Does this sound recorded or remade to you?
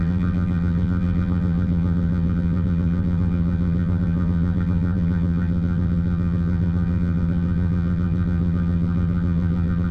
remade